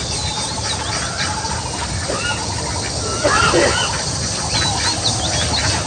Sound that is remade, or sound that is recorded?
recorded